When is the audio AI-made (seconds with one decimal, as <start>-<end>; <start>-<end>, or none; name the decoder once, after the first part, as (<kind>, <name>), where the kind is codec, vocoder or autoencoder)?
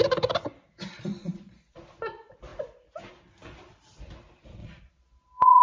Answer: 1.1-1.8 (vocoder, Vocos); 4.6-5.6